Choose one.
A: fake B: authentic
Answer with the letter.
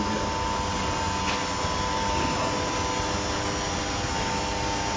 B